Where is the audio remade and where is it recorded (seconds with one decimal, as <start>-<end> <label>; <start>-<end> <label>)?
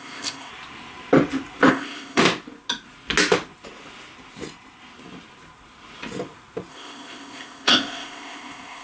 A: 0.0-0.5 remade; 0.5-1.7 recorded; 1.7-2.2 remade; 2.2-6.7 recorded; 6.7-8.8 remade